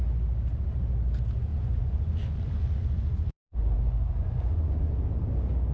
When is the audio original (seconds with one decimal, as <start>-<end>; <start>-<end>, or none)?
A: 0.0-1.5; 4.9-5.7